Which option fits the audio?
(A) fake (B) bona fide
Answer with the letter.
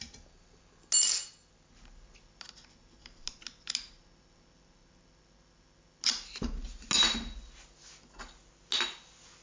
B